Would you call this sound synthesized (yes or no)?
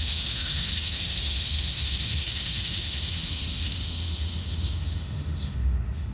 yes